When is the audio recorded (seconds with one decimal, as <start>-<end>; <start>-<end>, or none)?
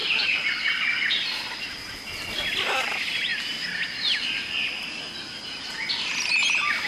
0.0-1.1; 3.3-6.5